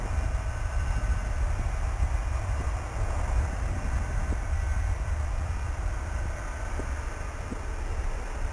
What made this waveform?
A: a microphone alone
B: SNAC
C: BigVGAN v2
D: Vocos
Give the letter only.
A